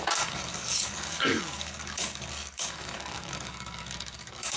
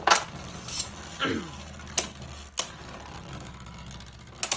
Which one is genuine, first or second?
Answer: second